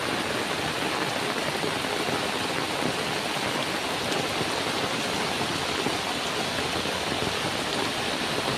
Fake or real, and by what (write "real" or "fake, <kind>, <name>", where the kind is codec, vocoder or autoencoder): real